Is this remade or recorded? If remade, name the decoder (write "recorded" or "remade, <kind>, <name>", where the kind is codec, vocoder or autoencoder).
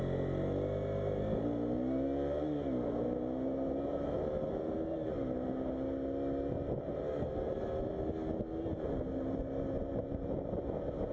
recorded